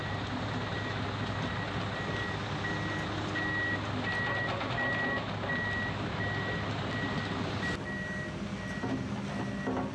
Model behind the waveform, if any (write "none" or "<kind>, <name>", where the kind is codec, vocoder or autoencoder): none